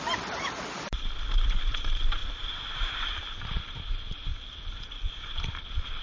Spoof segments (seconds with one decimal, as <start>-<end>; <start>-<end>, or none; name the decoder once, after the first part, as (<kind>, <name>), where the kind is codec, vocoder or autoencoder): 0.0-4.3 (vocoder, BigVGAN v2); 5.1-6.0